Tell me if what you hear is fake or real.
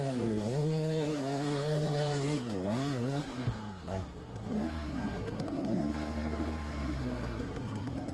fake